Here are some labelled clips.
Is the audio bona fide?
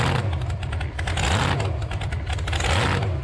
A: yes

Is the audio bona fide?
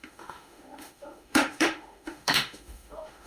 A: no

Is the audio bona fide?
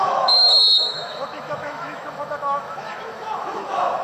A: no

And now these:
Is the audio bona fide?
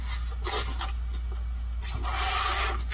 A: yes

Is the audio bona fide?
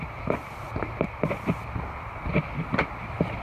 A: yes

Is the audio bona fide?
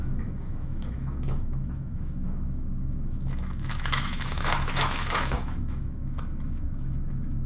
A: no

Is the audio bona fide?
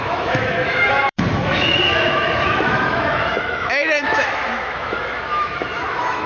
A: no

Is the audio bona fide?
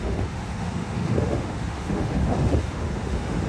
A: no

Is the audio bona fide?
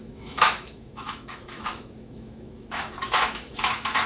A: no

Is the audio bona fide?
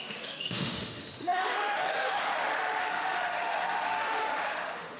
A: no